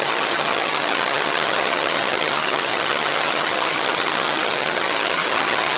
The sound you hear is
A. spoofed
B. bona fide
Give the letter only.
A